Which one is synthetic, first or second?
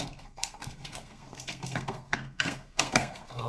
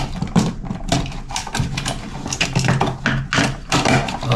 first